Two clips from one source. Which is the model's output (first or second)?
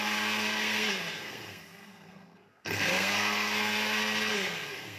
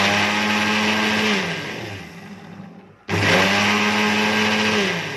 first